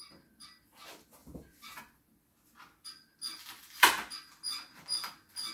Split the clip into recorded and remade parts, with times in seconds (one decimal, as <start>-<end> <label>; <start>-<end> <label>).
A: 0.0-5.5 recorded